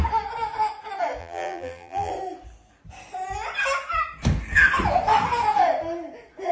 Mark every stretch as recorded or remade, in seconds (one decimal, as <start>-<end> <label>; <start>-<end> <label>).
0.0-1.2 recorded; 1.2-2.1 remade; 2.1-6.5 recorded